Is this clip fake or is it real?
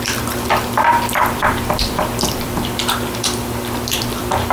fake